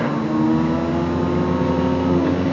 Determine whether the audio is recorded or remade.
recorded